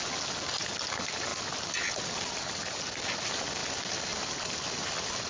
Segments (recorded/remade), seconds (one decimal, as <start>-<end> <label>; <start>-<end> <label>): 0.0-5.3 recorded